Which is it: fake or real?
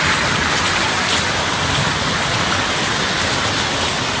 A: real